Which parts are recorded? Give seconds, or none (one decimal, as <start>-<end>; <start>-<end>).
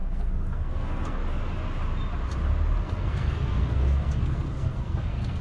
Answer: 1.2-2.8